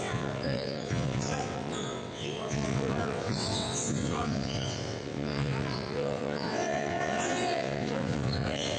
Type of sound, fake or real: fake